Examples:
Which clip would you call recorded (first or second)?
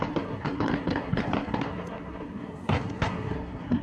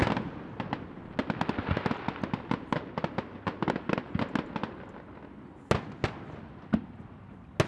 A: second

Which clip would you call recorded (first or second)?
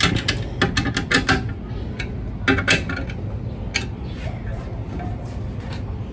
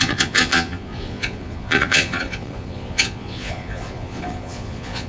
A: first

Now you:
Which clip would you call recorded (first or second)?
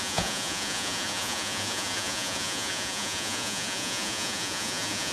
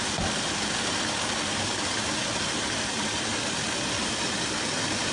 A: second